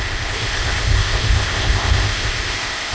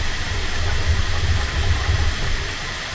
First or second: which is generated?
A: first